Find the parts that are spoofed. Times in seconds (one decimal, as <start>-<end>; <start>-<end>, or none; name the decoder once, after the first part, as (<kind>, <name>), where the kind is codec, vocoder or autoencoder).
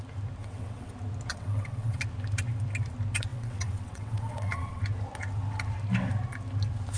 0.4-0.9 (vocoder, WaveNeXt); 1.3-2.0; 3.3-4.8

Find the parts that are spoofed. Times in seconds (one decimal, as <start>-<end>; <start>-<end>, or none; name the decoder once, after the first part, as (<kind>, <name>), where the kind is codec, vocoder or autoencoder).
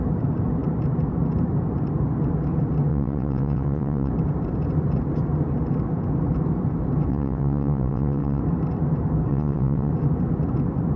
2.9-4.1 (vocoder, WaveNeXt); 7.1-8.4; 9.3-9.9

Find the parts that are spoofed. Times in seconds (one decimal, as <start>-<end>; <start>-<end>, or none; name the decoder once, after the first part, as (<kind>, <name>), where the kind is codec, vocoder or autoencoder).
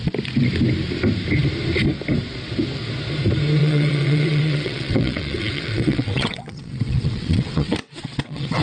3.6-8.6 (vocoder, WaveNeXt)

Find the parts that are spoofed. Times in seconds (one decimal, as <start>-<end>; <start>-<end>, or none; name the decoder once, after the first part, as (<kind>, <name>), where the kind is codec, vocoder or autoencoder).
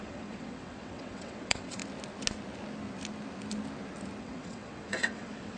0.0-1.8 (vocoder, WaveNeXt); 4.2-5.6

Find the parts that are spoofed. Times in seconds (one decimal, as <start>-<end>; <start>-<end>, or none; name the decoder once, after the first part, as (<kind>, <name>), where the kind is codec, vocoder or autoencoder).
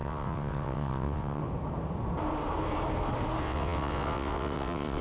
0.0-1.4 (vocoder, WaveNeXt); 3.4-5.0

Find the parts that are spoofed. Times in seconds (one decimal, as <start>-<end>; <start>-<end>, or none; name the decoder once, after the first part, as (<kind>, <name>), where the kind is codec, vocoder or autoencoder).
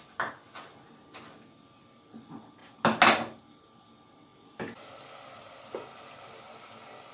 none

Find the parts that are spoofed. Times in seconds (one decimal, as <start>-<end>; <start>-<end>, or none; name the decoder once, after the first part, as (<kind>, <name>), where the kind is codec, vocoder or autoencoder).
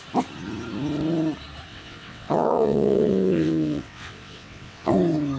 1.7-4.9 (vocoder, WaveNeXt)